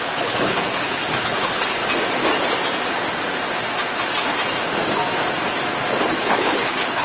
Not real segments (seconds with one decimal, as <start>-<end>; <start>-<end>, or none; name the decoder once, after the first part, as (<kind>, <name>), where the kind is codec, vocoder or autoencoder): 0.0-1.8 (codec, HILCodec); 6.0-7.0